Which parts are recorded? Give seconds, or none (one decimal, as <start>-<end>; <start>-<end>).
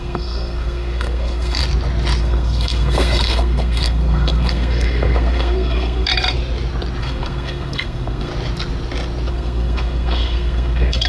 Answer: 1.6-2.2; 6.1-7.0; 8.3-9.3